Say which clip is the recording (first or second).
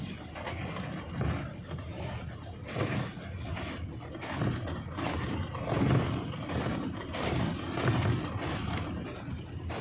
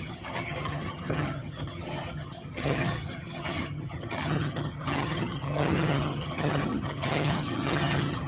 first